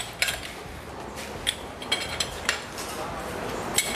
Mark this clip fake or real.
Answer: real